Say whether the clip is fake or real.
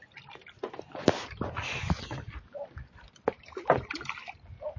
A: real